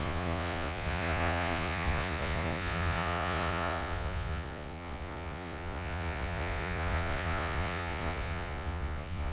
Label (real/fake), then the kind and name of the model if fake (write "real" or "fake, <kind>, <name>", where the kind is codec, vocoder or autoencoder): fake, vocoder, Vocos